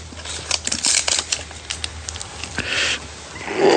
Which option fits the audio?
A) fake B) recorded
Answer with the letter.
B